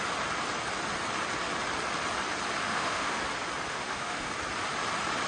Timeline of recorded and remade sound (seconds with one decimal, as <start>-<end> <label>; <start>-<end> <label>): 0.0-2.6 recorded; 2.6-3.2 remade; 3.2-3.7 recorded; 3.7-4.3 remade; 4.3-5.3 recorded